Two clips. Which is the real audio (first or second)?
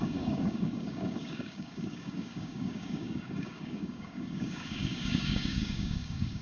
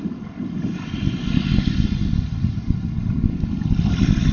second